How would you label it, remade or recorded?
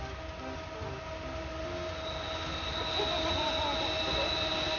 recorded